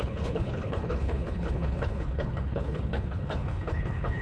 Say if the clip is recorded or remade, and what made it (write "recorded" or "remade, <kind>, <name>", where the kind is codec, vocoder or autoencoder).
remade, codec, HILCodec